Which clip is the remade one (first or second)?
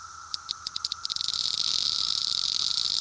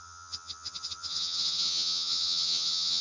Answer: second